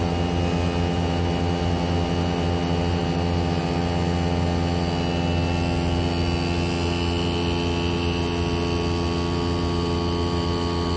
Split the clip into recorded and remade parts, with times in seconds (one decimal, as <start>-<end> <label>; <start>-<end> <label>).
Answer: 0.0-11.0 recorded